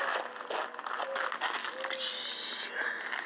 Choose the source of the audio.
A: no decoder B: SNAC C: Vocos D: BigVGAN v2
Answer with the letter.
A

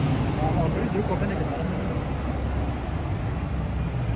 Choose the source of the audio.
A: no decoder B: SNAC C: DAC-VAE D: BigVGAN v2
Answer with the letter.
A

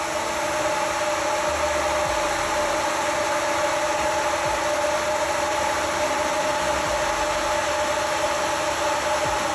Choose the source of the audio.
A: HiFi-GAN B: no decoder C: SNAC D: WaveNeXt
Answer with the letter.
B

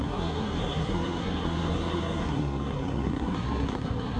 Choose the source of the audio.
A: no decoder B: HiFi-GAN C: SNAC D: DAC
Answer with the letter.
C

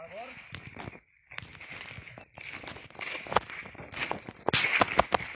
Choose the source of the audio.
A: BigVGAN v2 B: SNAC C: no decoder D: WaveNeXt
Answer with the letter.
C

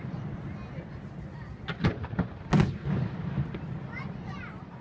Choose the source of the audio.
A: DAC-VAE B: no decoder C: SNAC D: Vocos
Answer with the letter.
B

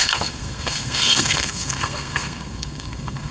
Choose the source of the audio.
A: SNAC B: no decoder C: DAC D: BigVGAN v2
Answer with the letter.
A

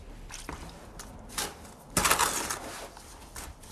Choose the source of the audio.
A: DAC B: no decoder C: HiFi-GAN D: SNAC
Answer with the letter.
B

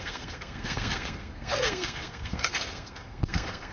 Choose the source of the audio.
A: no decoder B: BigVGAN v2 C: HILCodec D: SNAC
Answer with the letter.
D